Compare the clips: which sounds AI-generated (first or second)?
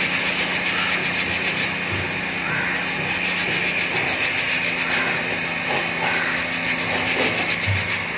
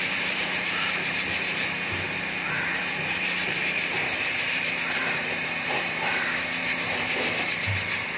second